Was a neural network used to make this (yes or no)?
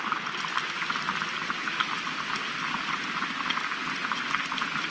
no